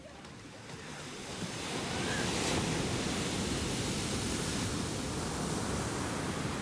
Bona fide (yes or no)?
yes